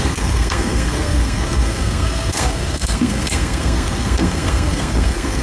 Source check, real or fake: fake